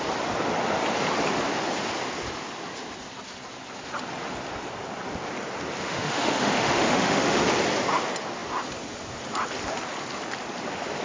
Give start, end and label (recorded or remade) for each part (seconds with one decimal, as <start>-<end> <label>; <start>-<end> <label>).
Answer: 0.0-5.8 recorded; 5.8-7.4 remade; 7.4-11.0 recorded